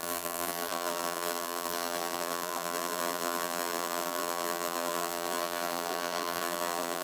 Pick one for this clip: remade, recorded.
remade